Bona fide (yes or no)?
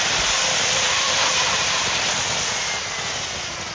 yes